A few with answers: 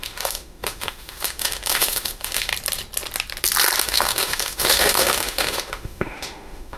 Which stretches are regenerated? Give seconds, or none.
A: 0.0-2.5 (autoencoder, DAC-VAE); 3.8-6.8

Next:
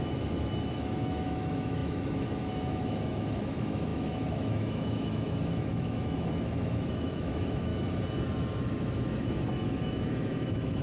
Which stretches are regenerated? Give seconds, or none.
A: 0.0-7.7 (autoencoder, DAC-VAE); 8.6-10.8

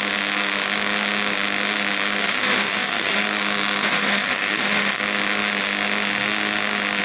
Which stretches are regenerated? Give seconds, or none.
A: 2.2-3.2 (autoencoder, DAC-VAE); 3.8-5.0

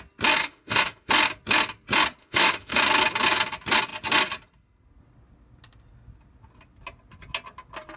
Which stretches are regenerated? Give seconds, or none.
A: 0.4-1.1 (autoencoder, DAC-VAE); 2.2-2.8

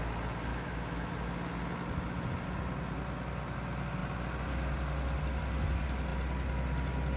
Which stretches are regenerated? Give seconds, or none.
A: 0.5-1.1 (autoencoder, DAC-VAE)

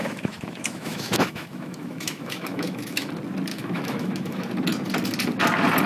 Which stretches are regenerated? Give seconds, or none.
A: 0.0-3.1 (autoencoder, DAC-VAE); 3.5-4.5

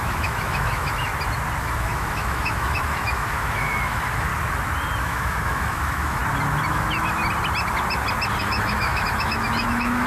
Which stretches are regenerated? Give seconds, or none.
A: 0.0-1.1 (autoencoder, DAC-VAE); 1.6-4.3; 5.0-6.2; 6.7-7.2; 8.4-10.1

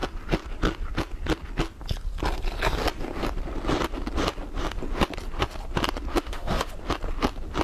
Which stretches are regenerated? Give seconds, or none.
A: 6.1-6.7 (autoencoder, DAC-VAE)